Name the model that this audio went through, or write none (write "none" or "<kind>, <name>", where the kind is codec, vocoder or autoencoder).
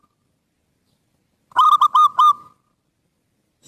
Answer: none